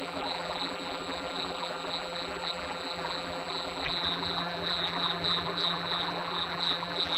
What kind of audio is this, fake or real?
fake